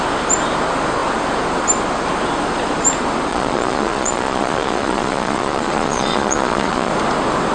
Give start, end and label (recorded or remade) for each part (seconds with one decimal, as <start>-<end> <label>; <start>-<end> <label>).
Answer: 0.0-3.3 recorded; 3.3-6.9 remade; 6.9-7.5 recorded